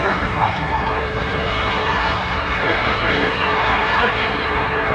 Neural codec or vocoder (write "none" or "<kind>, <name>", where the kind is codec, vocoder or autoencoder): codec, SNAC